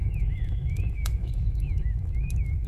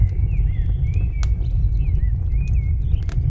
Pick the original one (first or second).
second